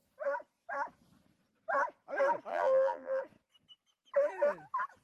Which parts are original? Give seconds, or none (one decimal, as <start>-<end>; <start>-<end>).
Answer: 0.0-2.5; 3.2-5.0